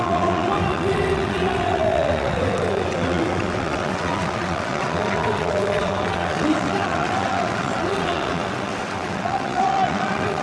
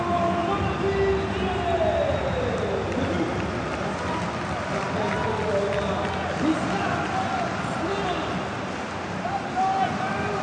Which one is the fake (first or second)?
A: first